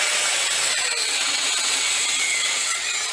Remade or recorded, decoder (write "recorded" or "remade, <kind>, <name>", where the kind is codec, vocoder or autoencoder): remade, vocoder, WaveNeXt